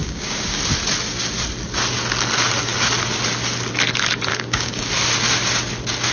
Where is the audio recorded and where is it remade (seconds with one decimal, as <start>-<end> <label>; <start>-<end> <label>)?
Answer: 0.0-0.6 remade; 0.6-4.3 recorded; 4.3-4.9 remade; 4.9-6.1 recorded